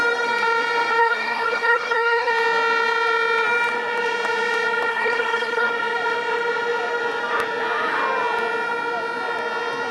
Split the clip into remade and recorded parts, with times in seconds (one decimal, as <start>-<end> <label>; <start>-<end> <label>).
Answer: 0.0-1.0 recorded; 1.0-2.3 remade; 2.3-4.9 recorded; 4.9-5.7 remade; 5.7-9.9 recorded